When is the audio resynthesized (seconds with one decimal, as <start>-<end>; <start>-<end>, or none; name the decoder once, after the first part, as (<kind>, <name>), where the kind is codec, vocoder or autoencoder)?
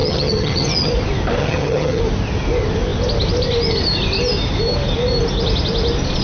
0.0-0.9 (vocoder, HiFi-GAN); 1.4-2.0